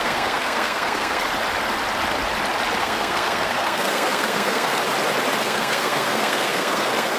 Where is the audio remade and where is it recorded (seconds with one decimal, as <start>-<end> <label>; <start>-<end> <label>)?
0.0-1.2 remade; 1.2-2.8 recorded; 2.8-4.8 remade; 4.8-5.4 recorded; 5.4-7.2 remade